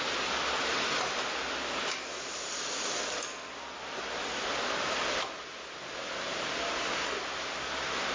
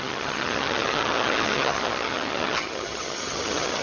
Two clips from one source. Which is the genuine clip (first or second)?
first